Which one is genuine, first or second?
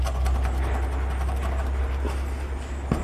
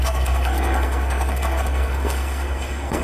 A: first